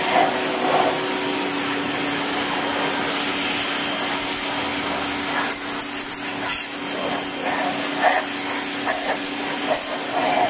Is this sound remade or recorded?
recorded